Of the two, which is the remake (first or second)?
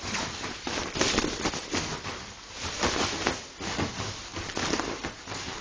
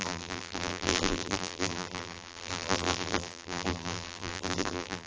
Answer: second